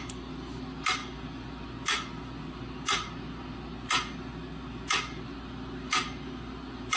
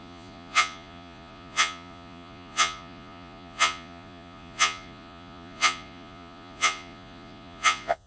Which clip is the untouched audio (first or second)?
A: first